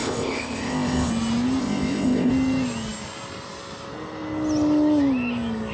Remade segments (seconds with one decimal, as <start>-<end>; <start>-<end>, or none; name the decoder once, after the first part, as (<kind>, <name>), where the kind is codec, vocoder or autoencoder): 0.0-1.1 (codec, ZipCodec); 1.6-2.3